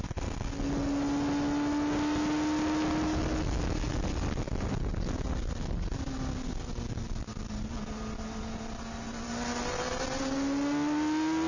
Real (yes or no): yes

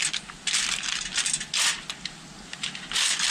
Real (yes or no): yes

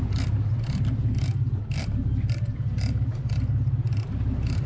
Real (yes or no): no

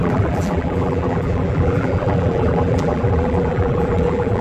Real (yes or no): no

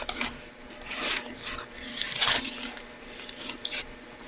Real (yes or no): yes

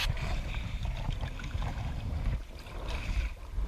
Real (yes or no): no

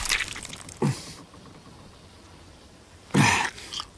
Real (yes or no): no